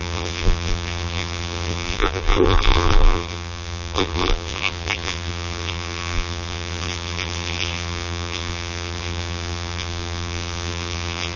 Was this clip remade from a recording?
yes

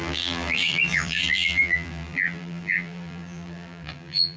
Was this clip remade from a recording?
yes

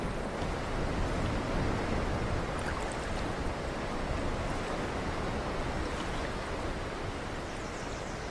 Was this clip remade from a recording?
no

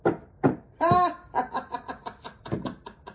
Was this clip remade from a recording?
yes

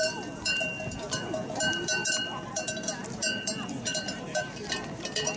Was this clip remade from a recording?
yes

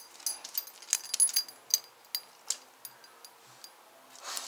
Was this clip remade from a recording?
no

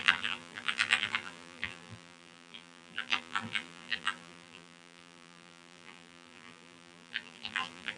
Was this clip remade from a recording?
yes